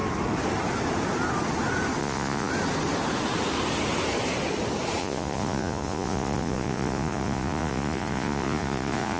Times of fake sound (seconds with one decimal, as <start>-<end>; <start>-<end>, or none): 2.0-2.5; 5.0-9.2